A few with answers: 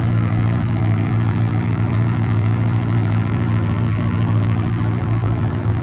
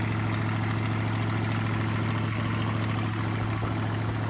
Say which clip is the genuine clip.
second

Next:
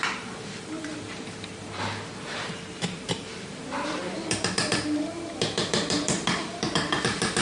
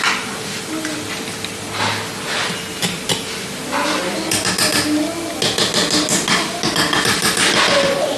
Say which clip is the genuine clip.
second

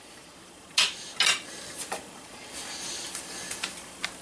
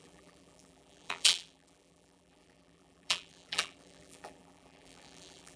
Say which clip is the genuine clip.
first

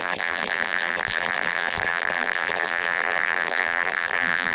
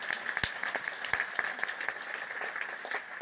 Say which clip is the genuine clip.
second